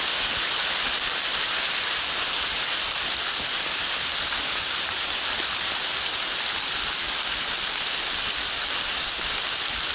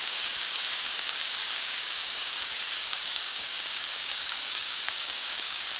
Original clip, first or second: first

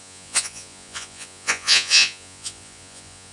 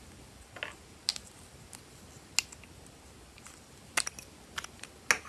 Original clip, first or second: second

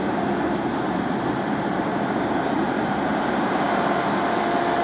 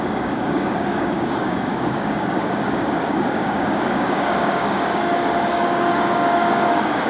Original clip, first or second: first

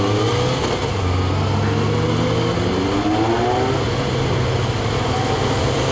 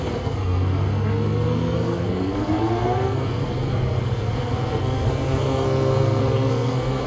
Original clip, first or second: first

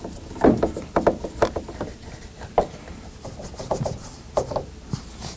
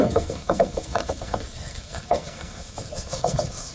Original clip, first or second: first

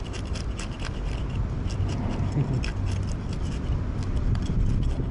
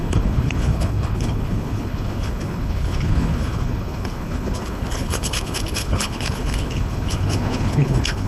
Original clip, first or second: first